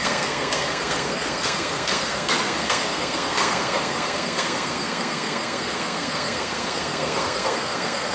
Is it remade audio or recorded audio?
remade